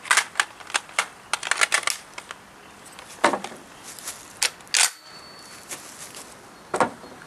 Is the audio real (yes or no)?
yes